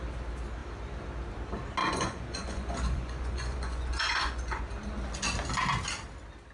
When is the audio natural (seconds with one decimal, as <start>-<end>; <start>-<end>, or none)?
0.0-1.8; 4.6-6.5